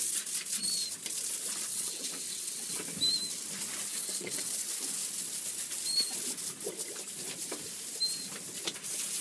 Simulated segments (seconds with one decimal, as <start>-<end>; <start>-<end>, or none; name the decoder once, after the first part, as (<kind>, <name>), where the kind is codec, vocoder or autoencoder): 1.7-2.8 (vocoder, WaveNeXt); 3.9-4.5